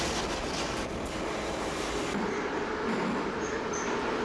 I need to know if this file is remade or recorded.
recorded